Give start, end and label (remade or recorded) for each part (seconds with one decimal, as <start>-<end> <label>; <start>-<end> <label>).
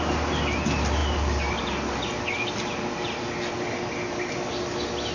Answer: 0.0-5.1 recorded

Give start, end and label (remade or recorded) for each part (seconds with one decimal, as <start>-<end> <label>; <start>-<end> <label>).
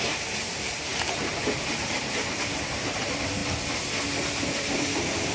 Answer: 0.0-3.4 remade; 3.4-4.2 recorded; 4.2-5.3 remade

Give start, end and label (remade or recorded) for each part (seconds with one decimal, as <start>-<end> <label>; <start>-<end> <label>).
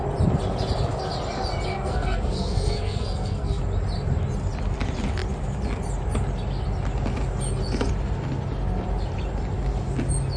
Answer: 0.0-1.7 recorded; 1.7-3.6 remade; 3.6-10.4 recorded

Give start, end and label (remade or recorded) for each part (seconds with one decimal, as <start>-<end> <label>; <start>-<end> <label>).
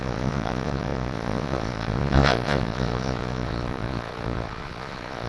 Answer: 0.0-5.3 remade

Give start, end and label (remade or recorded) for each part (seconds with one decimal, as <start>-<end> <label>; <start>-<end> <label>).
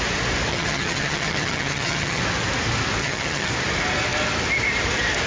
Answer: 0.0-0.5 recorded; 0.5-2.2 remade; 2.2-3.0 recorded; 3.0-3.5 remade; 3.5-5.3 recorded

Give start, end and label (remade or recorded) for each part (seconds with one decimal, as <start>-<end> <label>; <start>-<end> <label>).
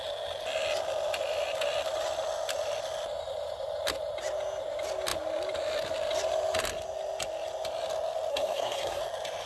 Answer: 0.0-8.3 recorded; 8.3-9.0 remade; 9.0-9.5 recorded